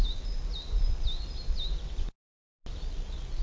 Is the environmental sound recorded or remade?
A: recorded